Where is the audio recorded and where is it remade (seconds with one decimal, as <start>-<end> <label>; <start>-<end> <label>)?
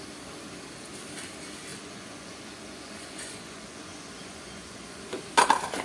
0.0-1.7 recorded; 1.7-5.2 remade; 5.2-5.8 recorded